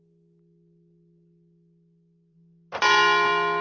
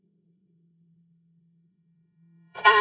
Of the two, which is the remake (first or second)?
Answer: second